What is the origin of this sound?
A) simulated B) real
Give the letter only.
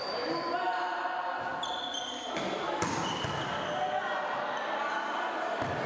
B